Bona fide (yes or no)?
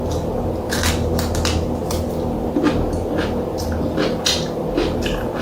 yes